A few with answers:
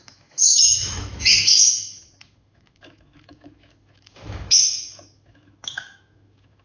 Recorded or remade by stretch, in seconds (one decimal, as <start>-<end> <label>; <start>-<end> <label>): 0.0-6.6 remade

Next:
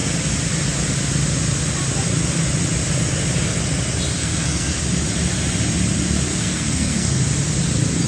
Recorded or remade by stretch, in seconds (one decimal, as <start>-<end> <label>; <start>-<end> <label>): 0.0-4.2 recorded; 4.2-4.8 remade; 4.8-6.3 recorded; 6.3-7.2 remade; 7.2-8.1 recorded

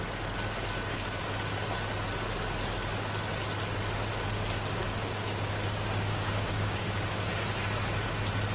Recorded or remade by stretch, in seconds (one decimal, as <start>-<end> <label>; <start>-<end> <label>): 0.0-4.8 recorded; 4.8-7.3 remade; 7.3-8.5 recorded

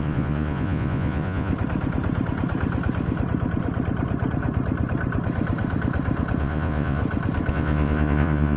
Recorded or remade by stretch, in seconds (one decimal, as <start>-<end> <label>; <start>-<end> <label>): 0.0-1.5 remade; 1.5-6.4 recorded; 6.4-7.0 remade; 7.0-7.5 recorded; 7.5-8.6 remade

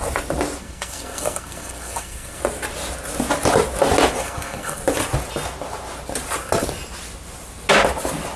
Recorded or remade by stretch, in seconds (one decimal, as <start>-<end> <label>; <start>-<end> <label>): 0.0-0.6 recorded; 0.6-2.4 remade; 2.4-4.2 recorded; 4.2-4.8 remade; 4.8-8.4 recorded

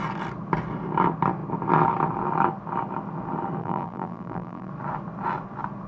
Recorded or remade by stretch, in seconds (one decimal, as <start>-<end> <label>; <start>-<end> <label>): 0.0-3.6 recorded; 3.6-4.7 remade; 4.7-5.9 recorded

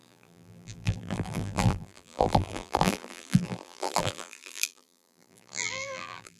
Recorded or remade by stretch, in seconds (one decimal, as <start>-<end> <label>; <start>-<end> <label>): 0.0-6.4 remade

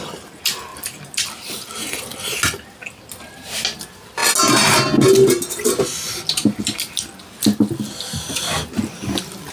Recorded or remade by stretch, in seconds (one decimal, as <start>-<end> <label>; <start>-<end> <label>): 0.0-9.5 recorded